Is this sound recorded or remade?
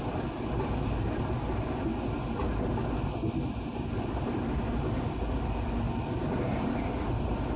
recorded